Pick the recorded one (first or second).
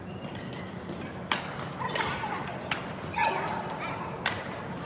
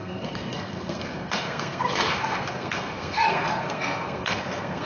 first